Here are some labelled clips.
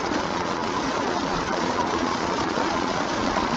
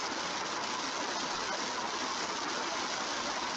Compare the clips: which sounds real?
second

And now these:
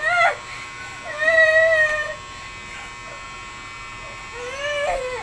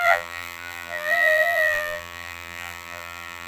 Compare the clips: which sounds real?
first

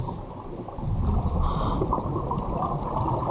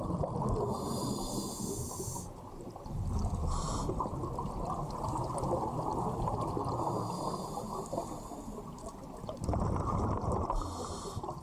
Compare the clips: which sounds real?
second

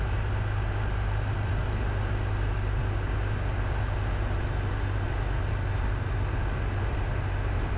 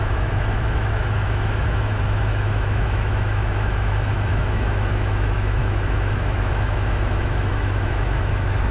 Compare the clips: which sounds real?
first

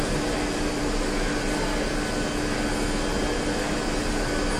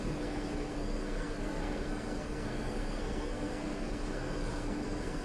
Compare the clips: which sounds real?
first